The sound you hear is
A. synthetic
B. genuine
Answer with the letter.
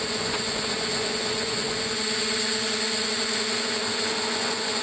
A